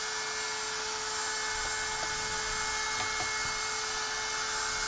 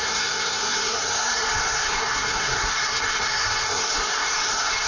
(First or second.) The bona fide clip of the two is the first